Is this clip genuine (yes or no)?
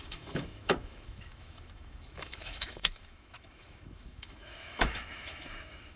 no